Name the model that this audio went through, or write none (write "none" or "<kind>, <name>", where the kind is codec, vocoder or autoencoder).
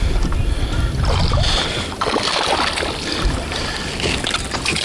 none